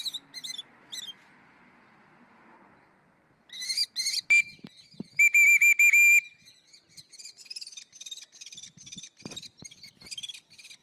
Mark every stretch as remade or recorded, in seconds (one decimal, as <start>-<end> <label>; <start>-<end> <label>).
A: 0.0-10.8 recorded